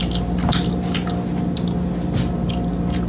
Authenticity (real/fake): real